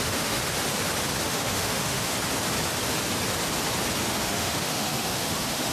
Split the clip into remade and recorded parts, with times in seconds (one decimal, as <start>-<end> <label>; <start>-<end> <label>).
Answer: 0.0-0.4 remade; 0.4-1.2 recorded; 1.2-2.1 remade; 2.1-4.0 recorded; 4.0-5.7 remade